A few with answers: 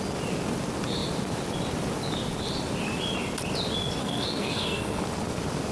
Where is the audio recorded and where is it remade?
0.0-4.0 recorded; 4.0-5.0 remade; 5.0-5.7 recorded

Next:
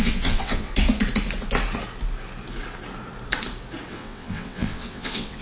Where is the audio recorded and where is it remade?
0.0-0.7 remade; 0.7-3.9 recorded; 3.9-5.4 remade

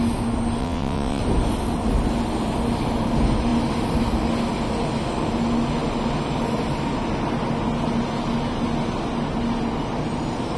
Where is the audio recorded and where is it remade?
0.0-0.6 recorded; 0.6-1.2 remade; 1.2-10.6 recorded

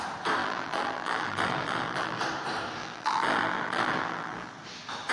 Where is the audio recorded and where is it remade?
0.0-0.4 recorded; 0.4-2.2 remade; 2.2-2.8 recorded; 2.8-4.5 remade; 4.5-5.1 recorded

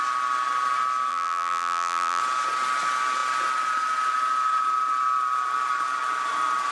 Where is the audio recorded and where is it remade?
0.0-1.1 recorded; 1.1-2.2 remade; 2.2-6.7 recorded

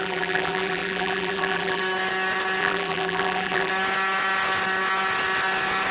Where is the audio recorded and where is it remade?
0.0-1.8 remade; 1.8-2.6 recorded; 2.6-3.7 remade; 3.7-5.9 recorded

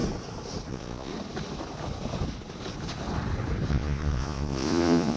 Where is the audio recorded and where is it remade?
0.0-0.7 recorded; 0.7-1.1 remade; 1.1-3.7 recorded; 3.7-5.2 remade